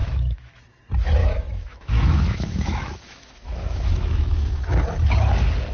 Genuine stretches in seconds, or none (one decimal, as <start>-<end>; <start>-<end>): 0.6-1.2; 4.6-5.7